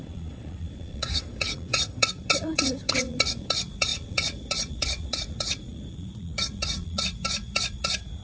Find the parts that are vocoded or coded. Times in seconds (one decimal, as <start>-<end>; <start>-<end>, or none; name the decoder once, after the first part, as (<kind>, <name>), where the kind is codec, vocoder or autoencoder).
0.0-8.2 (vocoder, Vocos)